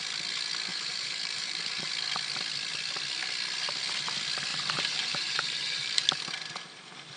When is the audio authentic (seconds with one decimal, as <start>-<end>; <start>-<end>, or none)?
0.0-0.7; 1.9-4.5; 6.2-7.2